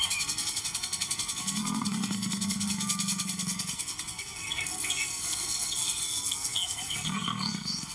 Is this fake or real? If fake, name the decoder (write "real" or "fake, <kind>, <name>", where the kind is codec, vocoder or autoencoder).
fake, codec, SNAC